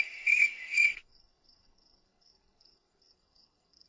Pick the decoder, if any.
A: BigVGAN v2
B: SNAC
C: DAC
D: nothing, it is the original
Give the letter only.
B